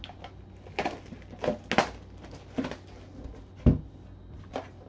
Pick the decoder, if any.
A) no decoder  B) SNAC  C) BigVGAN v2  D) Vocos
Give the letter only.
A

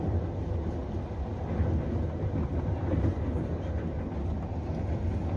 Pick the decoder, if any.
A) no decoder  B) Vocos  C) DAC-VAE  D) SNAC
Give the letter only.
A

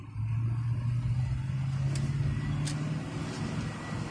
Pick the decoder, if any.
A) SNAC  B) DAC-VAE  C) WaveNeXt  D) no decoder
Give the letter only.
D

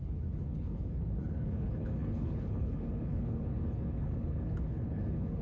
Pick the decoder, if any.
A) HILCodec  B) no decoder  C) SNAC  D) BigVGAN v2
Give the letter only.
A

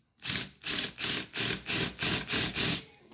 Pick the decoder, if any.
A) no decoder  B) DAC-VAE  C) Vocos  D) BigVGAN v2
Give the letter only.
A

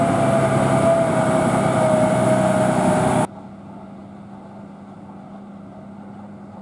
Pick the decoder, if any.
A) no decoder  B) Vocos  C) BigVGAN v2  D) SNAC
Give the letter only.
A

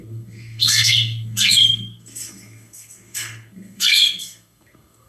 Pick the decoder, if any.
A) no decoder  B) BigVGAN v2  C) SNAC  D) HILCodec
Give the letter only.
C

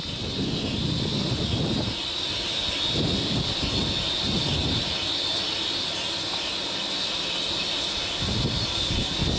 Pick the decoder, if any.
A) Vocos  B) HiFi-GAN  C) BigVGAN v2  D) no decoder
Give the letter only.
D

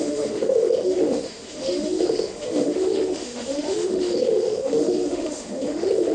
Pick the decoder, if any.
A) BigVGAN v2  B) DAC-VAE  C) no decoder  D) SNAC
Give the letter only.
B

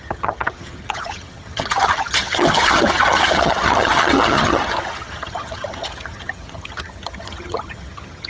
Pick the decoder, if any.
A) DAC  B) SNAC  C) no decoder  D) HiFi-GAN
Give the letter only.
D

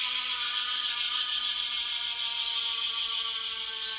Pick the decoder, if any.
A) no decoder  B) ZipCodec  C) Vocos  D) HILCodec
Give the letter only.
A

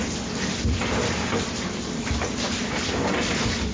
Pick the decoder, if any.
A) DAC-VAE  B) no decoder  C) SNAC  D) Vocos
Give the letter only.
B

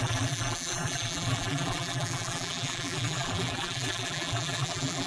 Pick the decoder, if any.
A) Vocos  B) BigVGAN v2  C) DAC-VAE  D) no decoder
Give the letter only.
B